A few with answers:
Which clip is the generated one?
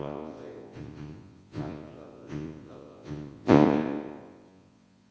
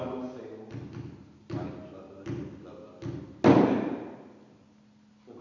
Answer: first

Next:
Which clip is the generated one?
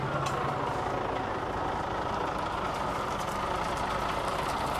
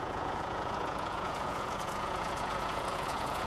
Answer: second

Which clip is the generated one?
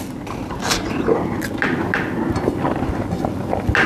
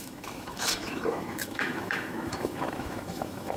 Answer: second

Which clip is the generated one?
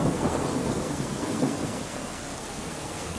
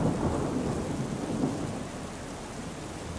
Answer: first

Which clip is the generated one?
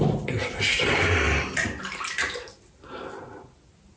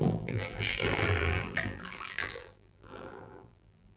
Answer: second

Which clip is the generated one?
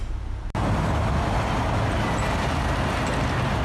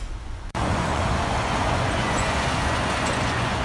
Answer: second